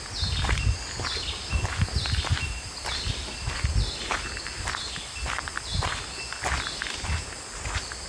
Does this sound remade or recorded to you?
recorded